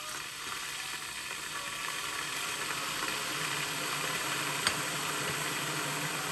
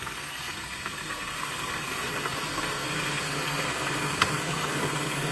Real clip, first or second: first